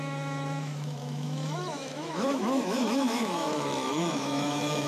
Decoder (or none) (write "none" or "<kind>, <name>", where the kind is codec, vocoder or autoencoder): autoencoder, DAC-VAE